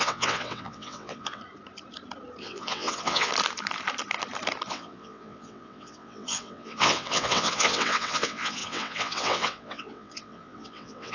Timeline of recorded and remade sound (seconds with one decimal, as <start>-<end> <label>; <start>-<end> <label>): 0.0-1.4 remade; 1.4-2.4 recorded; 2.4-3.3 remade; 3.3-4.7 recorded; 4.7-11.1 remade